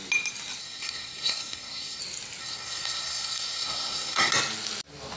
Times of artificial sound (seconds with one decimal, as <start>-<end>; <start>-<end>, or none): 0.6-2.0; 2.4-4.3